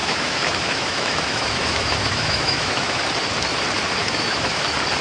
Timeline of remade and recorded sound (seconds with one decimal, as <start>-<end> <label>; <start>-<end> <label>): 0.0-3.0 remade; 3.0-4.0 recorded; 4.0-4.6 remade; 4.6-5.0 recorded